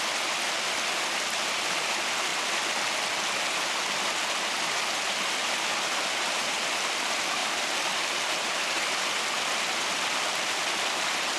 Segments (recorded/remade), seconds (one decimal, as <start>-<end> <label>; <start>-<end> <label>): 0.0-11.4 recorded